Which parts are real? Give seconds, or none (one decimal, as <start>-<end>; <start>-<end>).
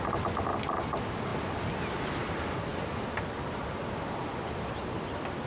0.0-5.5